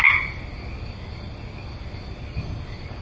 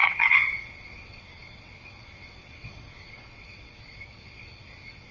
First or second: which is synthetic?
second